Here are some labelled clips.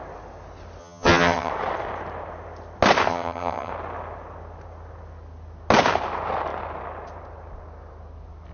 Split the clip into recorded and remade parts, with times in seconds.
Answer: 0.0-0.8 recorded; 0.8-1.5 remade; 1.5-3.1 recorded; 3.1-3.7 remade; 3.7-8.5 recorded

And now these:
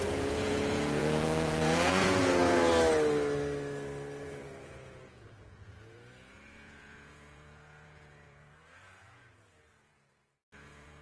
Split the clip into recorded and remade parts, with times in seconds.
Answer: 0.0-2.7 remade; 2.7-4.2 recorded; 4.2-11.0 remade

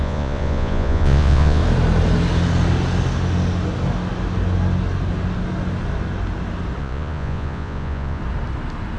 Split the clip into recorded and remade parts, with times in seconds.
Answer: 0.0-1.6 remade; 1.6-6.8 recorded; 6.8-8.2 remade; 8.2-9.0 recorded

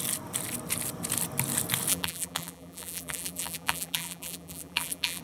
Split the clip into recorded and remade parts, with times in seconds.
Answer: 0.0-1.9 recorded; 1.9-5.2 remade

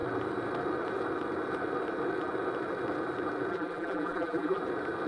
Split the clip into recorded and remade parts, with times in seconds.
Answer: 0.0-3.5 recorded; 3.5-4.6 remade; 4.6-5.1 recorded